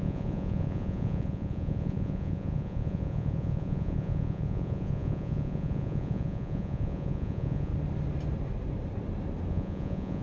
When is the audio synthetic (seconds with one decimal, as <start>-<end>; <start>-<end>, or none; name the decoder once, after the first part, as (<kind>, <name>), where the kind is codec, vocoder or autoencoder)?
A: 0.0-7.7 (vocoder, Vocos); 9.5-10.2